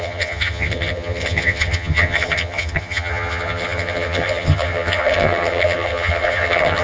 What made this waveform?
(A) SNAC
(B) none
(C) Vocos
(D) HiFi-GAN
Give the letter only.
D